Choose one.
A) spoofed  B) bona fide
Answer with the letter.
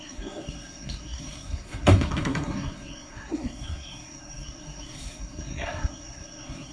A